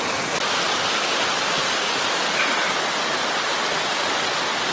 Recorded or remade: recorded